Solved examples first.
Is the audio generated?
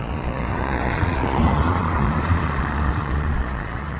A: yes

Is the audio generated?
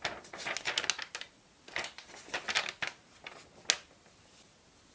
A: no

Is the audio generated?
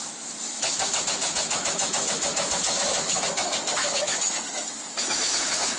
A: yes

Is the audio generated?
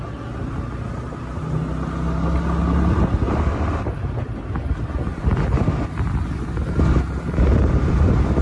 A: no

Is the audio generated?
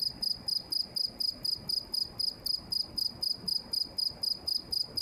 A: no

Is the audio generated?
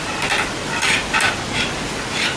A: no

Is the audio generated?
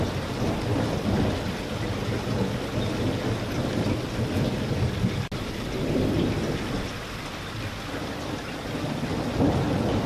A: no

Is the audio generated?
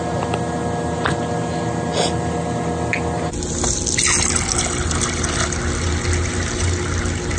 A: no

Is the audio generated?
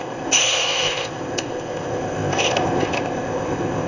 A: yes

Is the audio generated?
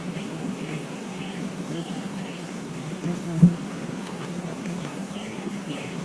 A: yes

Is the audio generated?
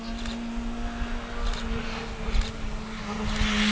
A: no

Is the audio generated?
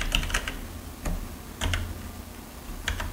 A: no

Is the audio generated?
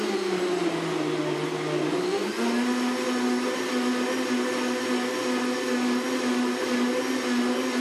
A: no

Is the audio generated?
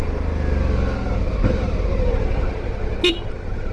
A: no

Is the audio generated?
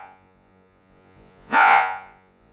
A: yes